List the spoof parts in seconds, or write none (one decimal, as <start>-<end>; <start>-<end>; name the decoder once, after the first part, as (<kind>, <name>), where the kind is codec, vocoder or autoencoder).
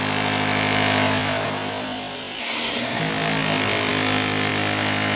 2.4-3.0 (codec, SNAC)